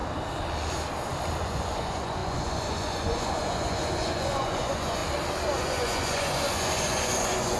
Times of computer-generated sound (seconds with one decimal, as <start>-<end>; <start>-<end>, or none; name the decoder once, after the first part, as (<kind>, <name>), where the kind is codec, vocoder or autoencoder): 1.4-5.0 (vocoder, Vocos); 5.6-7.6